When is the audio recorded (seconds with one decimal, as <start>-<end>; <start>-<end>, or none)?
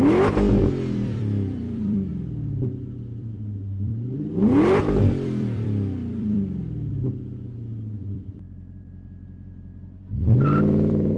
2.1-3.0; 6.9-8.0